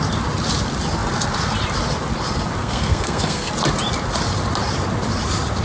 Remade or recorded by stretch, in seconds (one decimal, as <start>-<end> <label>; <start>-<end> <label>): 0.0-2.6 recorded; 2.6-3.5 remade; 3.5-5.6 recorded